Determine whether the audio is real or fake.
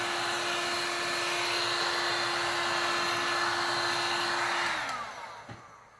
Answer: real